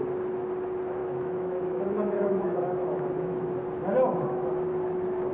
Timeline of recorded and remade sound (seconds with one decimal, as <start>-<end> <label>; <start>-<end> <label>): 0.0-1.0 recorded; 1.0-3.5 remade; 3.5-5.3 recorded